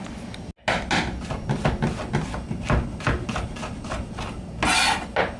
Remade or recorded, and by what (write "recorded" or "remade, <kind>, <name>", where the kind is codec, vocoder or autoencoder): recorded